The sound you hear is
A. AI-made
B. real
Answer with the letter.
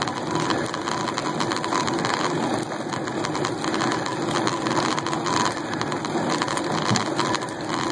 B